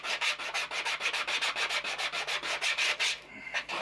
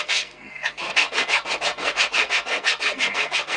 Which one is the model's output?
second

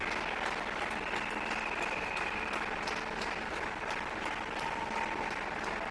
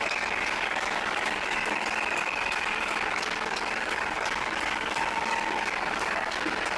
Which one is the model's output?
second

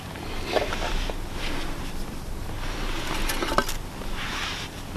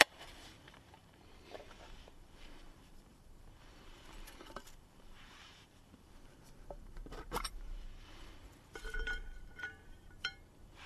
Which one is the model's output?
second